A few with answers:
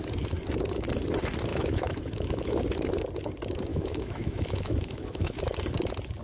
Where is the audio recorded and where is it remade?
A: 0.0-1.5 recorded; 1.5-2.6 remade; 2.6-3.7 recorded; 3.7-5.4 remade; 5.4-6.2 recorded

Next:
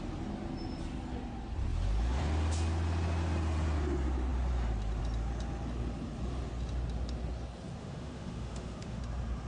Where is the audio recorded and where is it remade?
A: 0.0-7.8 recorded; 7.8-9.0 remade; 9.0-9.5 recorded

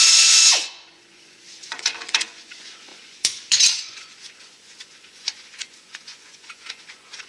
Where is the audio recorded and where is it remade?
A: 0.0-7.3 remade

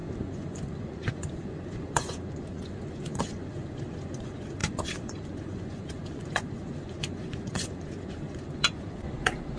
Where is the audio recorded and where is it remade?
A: 0.0-9.6 remade

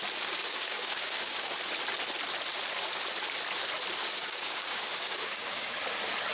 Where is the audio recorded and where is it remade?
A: 0.0-0.4 recorded; 0.4-1.5 remade; 1.5-4.0 recorded; 4.0-5.7 remade; 5.7-6.3 recorded